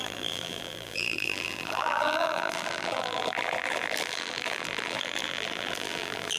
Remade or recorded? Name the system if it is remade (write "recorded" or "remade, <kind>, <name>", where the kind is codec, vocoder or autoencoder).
remade, vocoder, BigVGAN v2